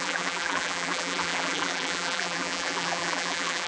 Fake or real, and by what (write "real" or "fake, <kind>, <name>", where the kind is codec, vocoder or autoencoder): fake, vocoder, BigVGAN v2